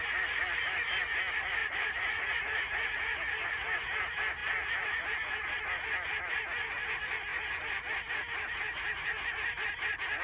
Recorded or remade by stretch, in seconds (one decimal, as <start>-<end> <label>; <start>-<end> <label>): 0.0-1.6 recorded; 1.6-3.0 remade; 3.0-10.2 recorded